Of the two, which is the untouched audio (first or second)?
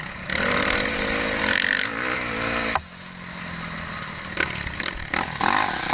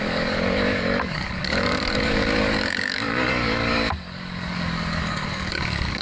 first